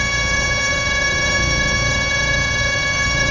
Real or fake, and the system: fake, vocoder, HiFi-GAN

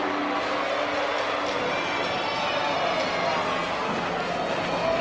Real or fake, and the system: real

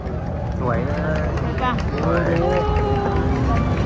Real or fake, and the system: real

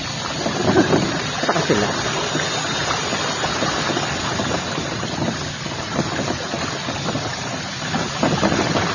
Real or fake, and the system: real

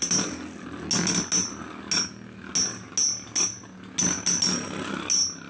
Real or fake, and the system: real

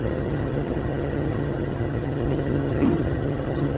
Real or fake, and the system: fake, vocoder, HiFi-GAN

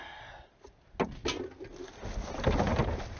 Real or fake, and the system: real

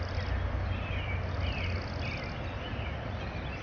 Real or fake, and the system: real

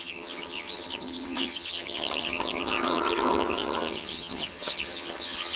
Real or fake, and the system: fake, vocoder, HiFi-GAN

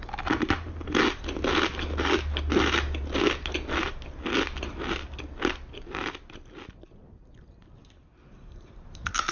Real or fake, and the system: real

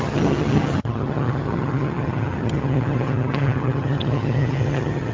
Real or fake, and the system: fake, vocoder, HiFi-GAN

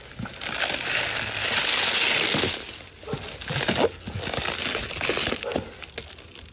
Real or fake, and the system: real